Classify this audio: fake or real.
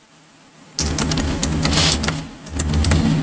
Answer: real